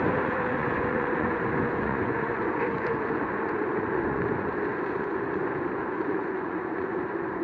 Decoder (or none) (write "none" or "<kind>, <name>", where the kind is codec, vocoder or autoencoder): vocoder, Vocos